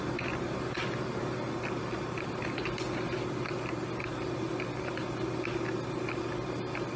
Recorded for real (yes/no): yes